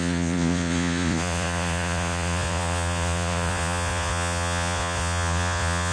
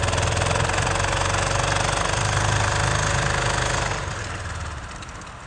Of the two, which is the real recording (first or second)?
second